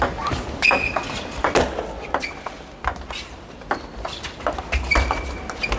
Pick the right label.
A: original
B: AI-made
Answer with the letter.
A